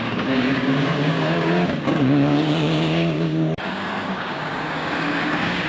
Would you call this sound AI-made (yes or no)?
yes